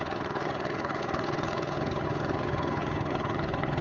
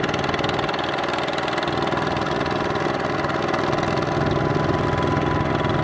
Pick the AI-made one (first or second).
first